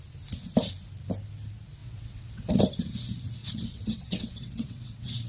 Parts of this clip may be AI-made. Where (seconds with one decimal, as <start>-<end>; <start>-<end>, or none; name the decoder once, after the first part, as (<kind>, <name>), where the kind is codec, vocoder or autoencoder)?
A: 1.8-2.6 (vocoder, WaveNeXt); 3.4-5.3